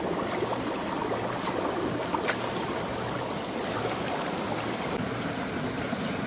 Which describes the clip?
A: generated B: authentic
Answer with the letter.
B